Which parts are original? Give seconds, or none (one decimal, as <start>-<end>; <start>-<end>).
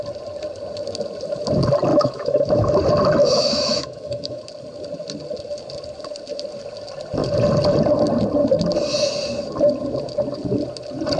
0.0-1.9; 2.8-3.2; 4.4-11.2